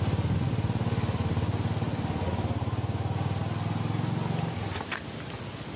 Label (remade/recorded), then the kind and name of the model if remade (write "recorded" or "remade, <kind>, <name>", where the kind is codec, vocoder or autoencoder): recorded